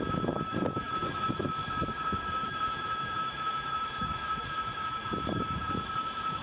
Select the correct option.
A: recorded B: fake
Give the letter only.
B